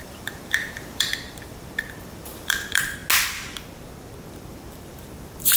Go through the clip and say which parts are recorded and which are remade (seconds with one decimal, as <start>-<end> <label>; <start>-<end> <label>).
0.0-1.1 remade; 1.1-2.1 recorded; 2.1-3.0 remade; 3.0-4.3 recorded; 4.3-5.6 remade